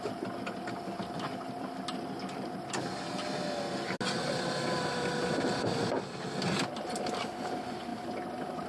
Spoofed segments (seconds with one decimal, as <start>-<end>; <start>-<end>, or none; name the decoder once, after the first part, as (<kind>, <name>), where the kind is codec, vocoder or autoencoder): none